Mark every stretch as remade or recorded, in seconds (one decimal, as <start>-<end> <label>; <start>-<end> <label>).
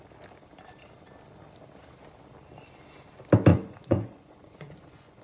0.0-3.5 recorded; 3.5-5.2 remade